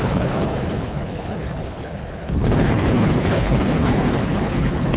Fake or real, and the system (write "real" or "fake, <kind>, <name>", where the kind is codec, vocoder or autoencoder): fake, codec, HILCodec